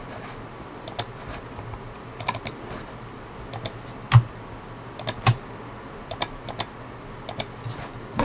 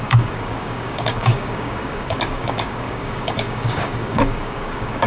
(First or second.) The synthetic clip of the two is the second